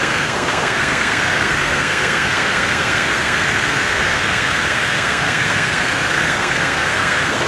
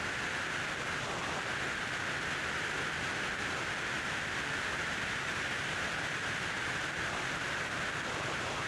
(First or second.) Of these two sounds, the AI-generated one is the first